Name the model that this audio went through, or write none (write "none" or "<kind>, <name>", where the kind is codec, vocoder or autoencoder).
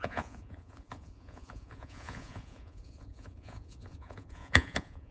vocoder, Vocos